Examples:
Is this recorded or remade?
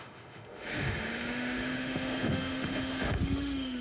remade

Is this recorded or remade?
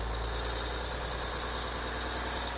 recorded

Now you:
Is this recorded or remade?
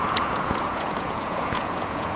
remade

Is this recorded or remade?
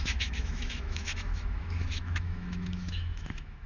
remade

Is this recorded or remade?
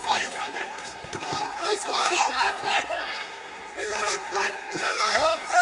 remade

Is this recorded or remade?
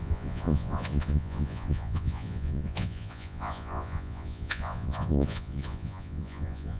remade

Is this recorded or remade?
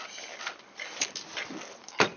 recorded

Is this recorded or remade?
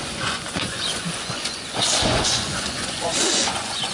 remade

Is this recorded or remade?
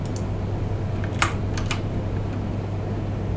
recorded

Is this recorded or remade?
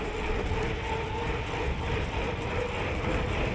recorded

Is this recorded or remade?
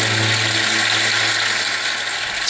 recorded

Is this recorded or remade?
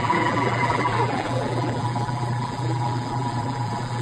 remade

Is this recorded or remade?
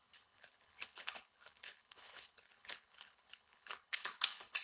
remade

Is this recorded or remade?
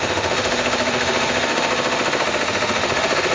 remade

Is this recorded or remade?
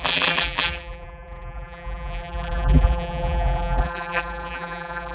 remade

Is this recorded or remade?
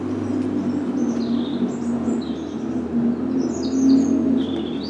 recorded